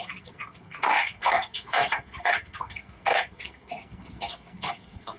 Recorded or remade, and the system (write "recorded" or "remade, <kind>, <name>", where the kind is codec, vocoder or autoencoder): remade, codec, SNAC